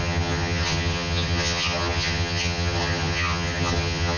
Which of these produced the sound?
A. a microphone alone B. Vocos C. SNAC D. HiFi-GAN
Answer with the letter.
D